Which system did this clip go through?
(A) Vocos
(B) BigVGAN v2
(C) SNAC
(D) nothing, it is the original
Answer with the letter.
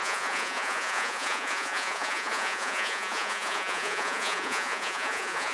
A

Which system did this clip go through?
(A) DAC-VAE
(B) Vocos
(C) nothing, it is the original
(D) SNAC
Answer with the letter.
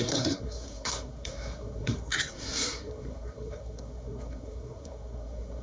D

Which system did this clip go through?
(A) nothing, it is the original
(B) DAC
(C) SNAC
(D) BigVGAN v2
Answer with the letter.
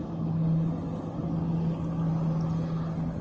A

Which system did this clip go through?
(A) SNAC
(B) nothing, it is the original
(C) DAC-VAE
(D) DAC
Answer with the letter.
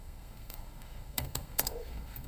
A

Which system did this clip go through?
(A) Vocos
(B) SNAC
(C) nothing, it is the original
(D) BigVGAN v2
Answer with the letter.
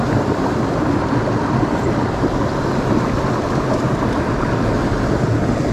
C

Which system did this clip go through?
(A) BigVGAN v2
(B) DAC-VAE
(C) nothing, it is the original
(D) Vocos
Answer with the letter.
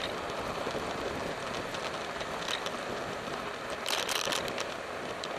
C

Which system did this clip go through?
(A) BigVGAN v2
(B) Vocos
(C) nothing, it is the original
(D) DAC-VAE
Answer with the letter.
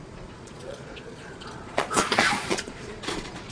B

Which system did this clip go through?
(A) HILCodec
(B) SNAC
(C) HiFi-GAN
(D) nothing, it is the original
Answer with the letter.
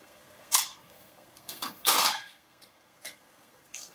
B